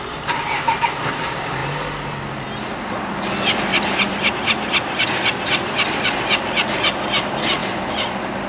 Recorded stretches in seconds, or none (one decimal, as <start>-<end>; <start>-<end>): 0.0-3.7; 4.3-8.5